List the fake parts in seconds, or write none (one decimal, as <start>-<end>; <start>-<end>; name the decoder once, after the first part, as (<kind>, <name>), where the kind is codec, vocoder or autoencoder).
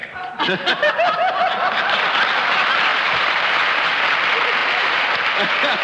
0.0-0.9 (vocoder, BigVGAN v2); 2.9-3.9; 4.6-5.8